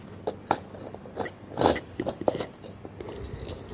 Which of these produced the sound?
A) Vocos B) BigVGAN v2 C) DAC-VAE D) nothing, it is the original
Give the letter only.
D